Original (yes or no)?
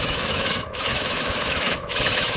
no